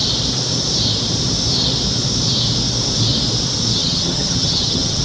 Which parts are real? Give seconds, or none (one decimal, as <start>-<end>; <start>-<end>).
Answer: 0.0-3.8

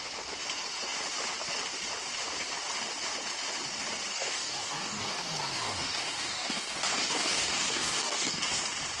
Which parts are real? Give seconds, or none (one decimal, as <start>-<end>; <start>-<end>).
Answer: 0.0-4.1; 8.6-9.0

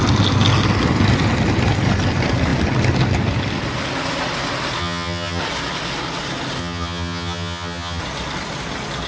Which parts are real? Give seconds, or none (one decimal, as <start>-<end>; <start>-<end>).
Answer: 0.0-4.8; 5.4-6.6; 8.0-9.1

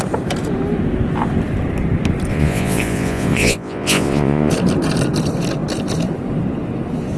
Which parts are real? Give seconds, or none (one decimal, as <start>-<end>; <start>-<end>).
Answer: 0.0-2.3; 4.5-7.2

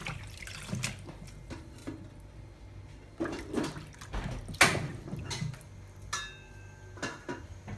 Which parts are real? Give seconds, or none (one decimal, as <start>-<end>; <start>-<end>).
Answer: 0.0-7.8